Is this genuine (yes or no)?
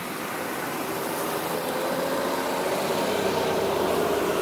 yes